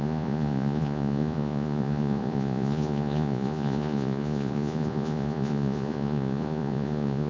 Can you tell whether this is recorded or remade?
remade